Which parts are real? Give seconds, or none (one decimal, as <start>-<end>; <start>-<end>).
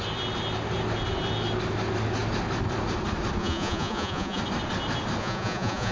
0.0-3.4; 4.4-5.2